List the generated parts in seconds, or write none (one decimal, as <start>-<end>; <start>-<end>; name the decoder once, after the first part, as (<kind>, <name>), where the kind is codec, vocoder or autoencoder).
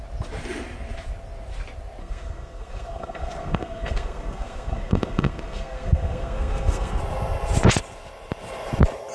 2.0-7.0 (codec, SNAC)